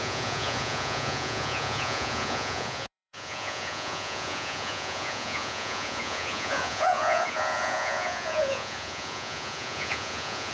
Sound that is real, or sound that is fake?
fake